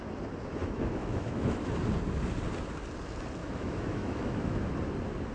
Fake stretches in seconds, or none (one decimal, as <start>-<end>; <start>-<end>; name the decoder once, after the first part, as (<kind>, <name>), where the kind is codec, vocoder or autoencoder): 0.6-1.7 (autoencoder, DAC-VAE); 3.4-4.7